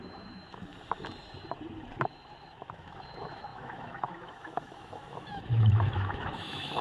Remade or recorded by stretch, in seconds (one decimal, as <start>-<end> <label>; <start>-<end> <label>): 0.0-0.7 remade; 0.7-2.0 recorded; 2.0-6.8 remade